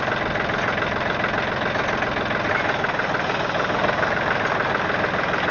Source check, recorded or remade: recorded